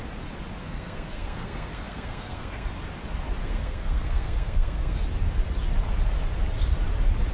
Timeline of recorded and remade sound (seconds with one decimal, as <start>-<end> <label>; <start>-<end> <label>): 0.0-0.6 recorded; 0.6-2.7 remade; 2.7-3.4 recorded; 3.4-5.0 remade; 5.0-7.3 recorded